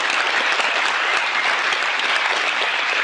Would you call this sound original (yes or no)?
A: yes